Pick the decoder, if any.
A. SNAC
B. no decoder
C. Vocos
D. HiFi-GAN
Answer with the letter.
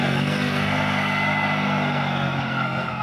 A